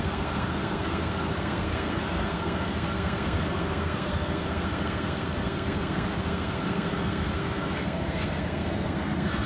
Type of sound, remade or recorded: remade